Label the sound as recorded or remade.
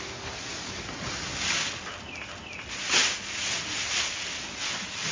recorded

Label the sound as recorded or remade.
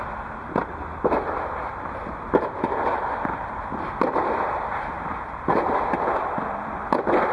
recorded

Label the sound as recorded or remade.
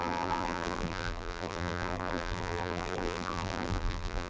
remade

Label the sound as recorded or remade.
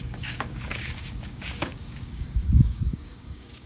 remade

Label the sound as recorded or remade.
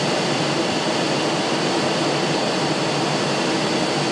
recorded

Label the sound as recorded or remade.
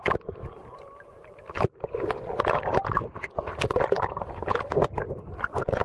recorded